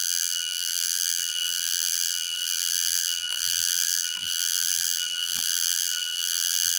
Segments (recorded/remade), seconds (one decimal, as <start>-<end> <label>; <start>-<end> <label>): 0.0-6.8 remade